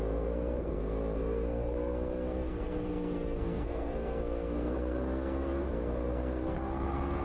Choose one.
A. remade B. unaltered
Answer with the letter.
A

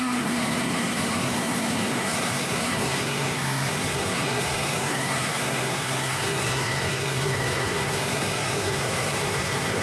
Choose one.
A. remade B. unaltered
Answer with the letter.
A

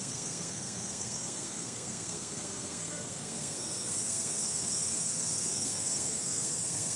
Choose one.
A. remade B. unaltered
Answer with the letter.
A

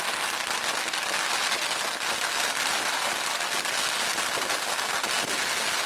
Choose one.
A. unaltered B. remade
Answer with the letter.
A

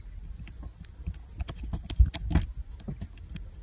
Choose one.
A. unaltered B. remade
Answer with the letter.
A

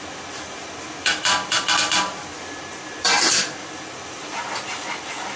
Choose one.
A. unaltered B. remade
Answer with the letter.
A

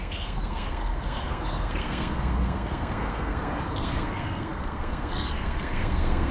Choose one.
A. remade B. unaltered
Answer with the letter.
A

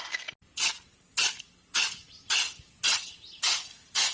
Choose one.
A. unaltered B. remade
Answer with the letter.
A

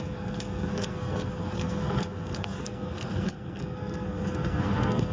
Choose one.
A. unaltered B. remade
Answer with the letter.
B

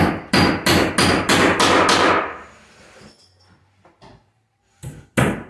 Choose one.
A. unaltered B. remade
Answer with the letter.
A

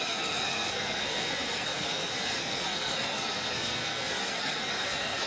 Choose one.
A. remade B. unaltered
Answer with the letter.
A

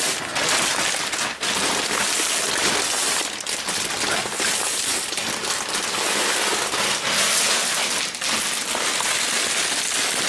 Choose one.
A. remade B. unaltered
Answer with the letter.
B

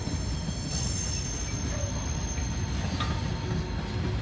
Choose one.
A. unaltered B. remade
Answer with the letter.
A